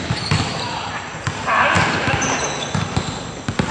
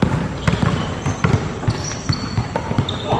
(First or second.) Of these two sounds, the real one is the first